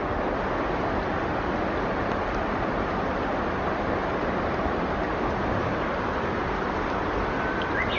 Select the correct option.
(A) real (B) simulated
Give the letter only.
A